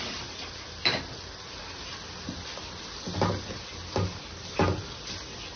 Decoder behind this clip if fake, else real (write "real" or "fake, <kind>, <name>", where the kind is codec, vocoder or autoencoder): real